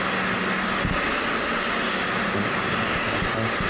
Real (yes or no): yes